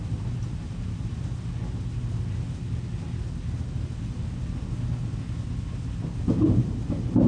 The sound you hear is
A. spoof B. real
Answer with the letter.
B